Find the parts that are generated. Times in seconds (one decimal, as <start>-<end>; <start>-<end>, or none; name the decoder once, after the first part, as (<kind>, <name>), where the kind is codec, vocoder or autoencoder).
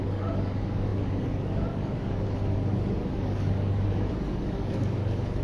0.0-5.4 (codec, DAC)